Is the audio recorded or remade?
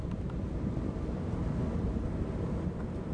recorded